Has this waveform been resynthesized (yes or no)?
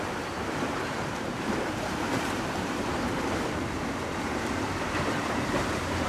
yes